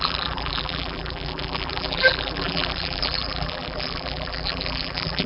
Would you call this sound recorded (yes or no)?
no